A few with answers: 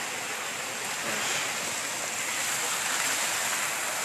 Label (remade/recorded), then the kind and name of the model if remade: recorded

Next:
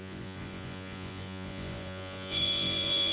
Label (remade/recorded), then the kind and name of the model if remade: remade, vocoder, Vocos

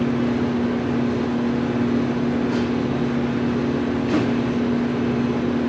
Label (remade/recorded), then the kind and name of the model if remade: recorded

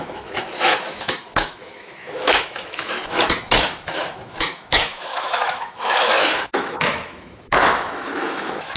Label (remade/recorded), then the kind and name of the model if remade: remade, autoencoder, DAC-VAE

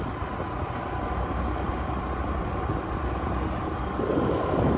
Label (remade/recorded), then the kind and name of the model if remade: recorded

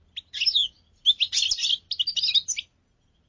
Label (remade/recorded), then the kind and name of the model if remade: recorded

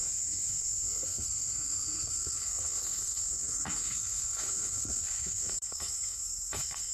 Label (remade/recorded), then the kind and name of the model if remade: remade, codec, SNAC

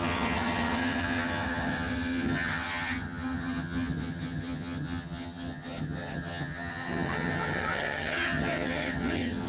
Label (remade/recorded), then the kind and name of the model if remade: remade, vocoder, HiFi-GAN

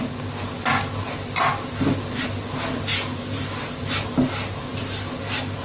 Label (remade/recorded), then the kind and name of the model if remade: recorded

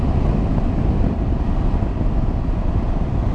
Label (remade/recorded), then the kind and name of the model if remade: recorded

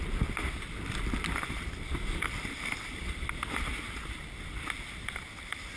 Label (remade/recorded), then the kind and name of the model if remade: recorded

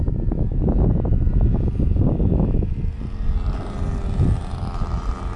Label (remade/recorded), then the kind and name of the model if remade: recorded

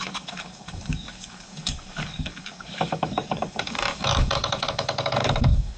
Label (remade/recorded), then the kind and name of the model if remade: remade, codec, DAC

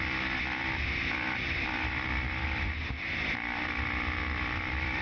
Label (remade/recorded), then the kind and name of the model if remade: remade, vocoder, BigVGAN v2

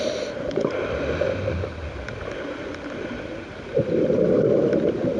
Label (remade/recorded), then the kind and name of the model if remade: recorded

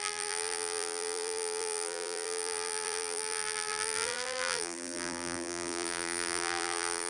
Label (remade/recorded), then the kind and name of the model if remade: remade, vocoder, BigVGAN v2